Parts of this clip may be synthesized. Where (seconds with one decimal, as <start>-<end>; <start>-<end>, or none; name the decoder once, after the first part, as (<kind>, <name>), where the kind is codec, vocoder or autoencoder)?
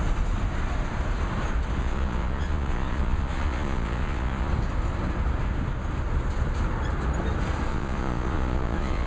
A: 1.8-4.5 (vocoder, Vocos); 7.7-9.1